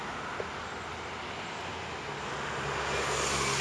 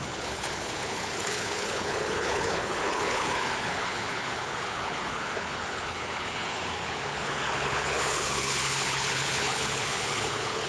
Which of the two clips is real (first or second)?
first